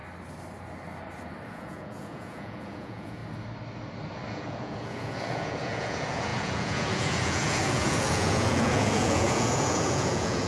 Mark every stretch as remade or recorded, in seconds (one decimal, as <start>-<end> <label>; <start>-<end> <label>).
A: 0.0-1.5 recorded; 1.5-3.2 remade; 3.2-4.3 recorded; 4.3-10.5 remade